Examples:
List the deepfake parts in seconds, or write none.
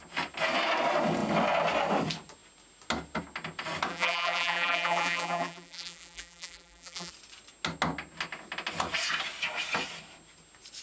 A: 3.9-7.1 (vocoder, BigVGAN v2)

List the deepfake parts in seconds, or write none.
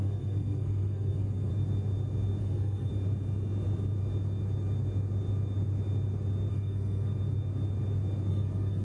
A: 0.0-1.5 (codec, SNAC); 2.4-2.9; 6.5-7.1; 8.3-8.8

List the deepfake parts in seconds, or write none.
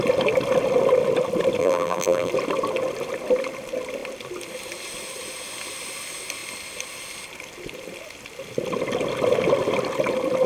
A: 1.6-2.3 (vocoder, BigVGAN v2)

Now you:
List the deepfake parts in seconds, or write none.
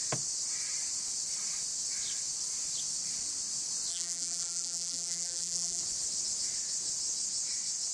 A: 3.9-5.8 (vocoder, BigVGAN v2)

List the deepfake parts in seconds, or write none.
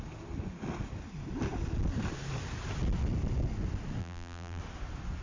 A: 4.0-4.6 (vocoder, BigVGAN v2)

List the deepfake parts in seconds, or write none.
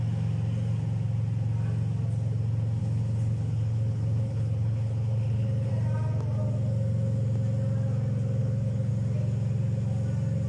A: 2.8-5.7 (codec, HILCodec); 8.4-8.9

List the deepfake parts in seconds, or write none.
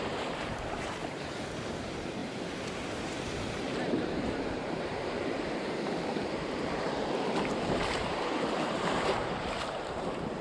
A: 0.0-1.0 (vocoder, BigVGAN v2); 1.8-10.4